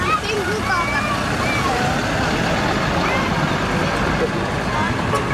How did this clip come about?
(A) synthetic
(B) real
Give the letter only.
B